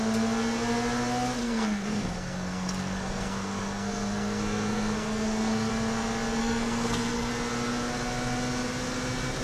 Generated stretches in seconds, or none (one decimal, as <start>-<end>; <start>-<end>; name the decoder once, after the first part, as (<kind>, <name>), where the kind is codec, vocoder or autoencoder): 1.4-5.7 (codec, SNAC); 6.4-7.3